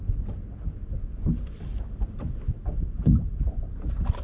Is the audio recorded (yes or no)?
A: yes